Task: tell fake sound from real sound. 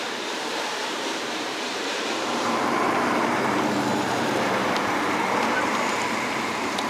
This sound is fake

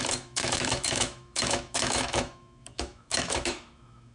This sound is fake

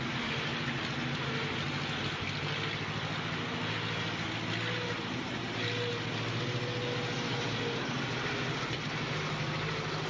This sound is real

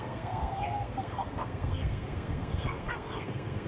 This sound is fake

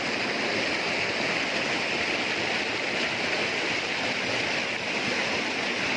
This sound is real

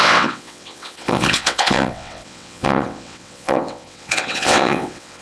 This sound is fake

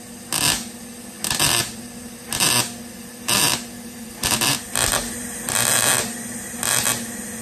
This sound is real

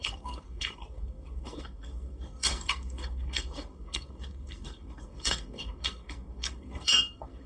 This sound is fake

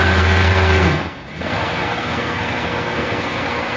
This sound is fake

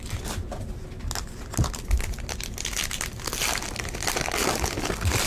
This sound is real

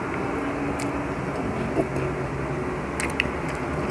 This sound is real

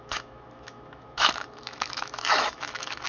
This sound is fake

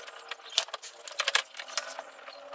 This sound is real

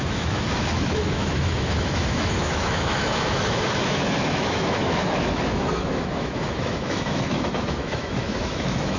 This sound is fake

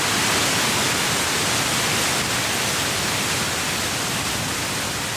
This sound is real